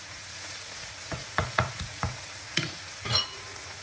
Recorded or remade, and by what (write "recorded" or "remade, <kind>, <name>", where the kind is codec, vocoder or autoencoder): remade, vocoder, Vocos